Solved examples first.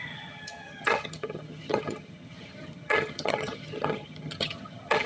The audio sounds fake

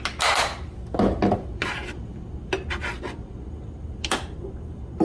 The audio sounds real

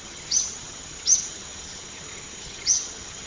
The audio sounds fake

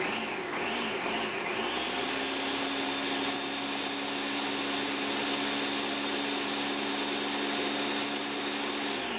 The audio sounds real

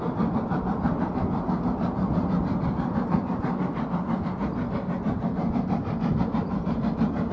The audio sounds real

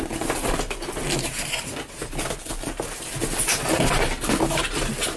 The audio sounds real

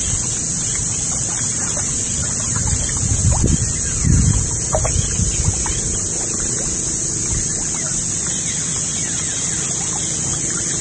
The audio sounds real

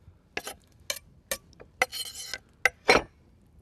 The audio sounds real